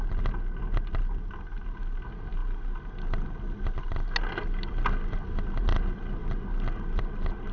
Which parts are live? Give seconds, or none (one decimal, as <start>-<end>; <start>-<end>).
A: 0.0-7.5